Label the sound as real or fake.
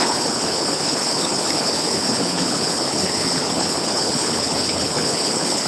fake